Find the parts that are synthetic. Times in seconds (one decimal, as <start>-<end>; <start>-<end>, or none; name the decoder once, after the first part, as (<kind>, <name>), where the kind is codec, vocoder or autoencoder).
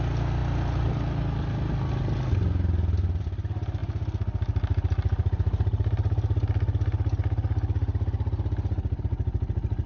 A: none